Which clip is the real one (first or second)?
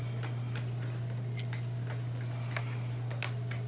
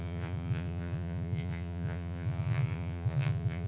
first